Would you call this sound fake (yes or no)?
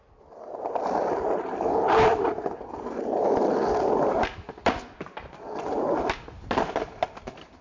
no